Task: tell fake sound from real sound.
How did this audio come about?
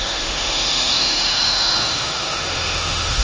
fake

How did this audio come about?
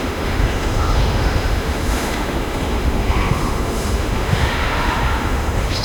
fake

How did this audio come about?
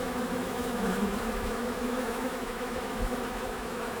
fake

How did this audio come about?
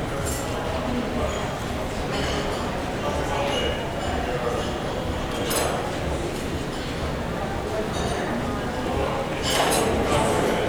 real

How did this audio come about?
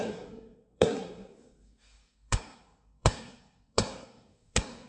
fake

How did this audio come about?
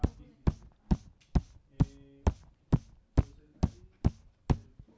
real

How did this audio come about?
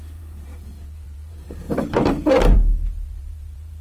fake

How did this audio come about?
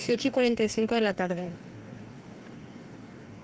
fake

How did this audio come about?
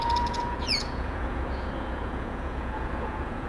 fake